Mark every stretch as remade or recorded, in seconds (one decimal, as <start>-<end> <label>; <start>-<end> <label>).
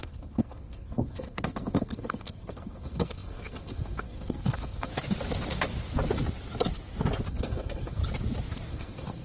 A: 0.0-4.9 remade; 4.9-7.3 recorded; 7.3-8.0 remade; 8.0-8.7 recorded; 8.7-9.2 remade